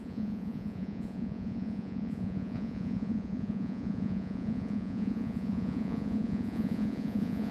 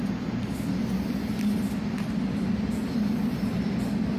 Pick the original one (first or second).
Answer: second